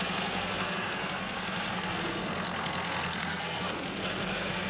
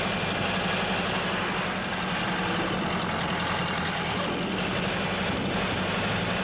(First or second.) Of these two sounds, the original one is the second